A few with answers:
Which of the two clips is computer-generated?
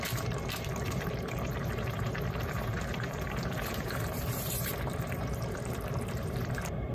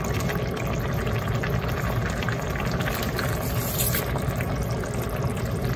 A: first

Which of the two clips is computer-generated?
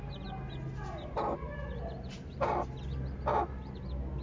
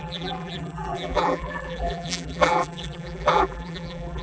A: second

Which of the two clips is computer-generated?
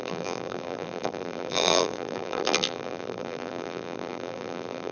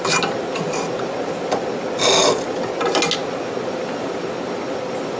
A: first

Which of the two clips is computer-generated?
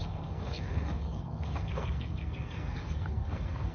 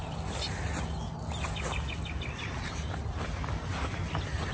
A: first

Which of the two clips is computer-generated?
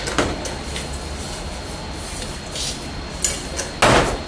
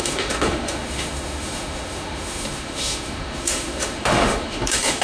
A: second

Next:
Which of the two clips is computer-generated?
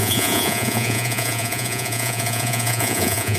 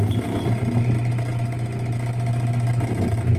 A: first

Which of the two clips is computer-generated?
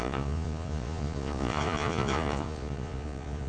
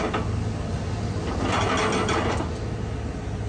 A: first